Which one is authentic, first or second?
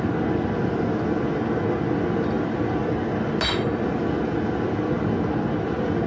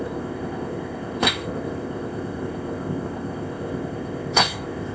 first